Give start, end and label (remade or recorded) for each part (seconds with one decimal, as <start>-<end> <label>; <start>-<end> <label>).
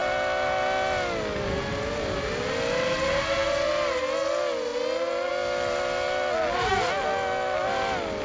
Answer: 0.0-8.2 recorded